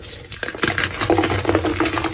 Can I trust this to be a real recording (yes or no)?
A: yes